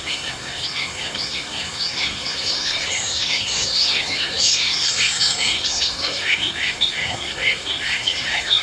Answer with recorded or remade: remade